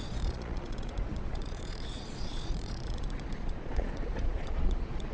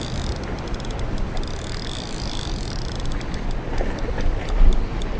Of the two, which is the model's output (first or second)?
first